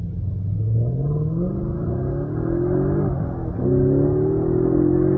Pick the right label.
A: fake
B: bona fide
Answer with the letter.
B